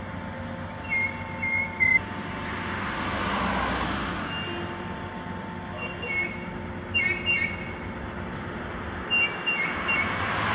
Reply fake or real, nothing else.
real